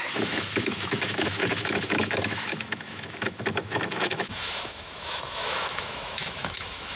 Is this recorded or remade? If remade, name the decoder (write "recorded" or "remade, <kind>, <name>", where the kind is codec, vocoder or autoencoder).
remade, autoencoder, DAC-VAE